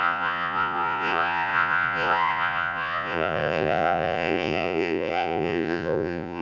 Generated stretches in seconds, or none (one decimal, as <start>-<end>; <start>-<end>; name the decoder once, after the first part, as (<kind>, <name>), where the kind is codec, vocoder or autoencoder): 0.0-6.4 (vocoder, Vocos)